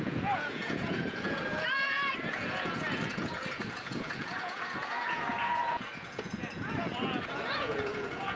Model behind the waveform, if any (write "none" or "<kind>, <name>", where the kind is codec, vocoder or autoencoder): vocoder, Vocos